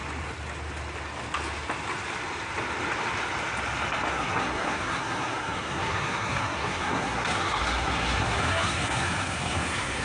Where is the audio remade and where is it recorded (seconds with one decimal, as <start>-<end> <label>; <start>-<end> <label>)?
0.0-4.1 recorded; 4.1-10.0 remade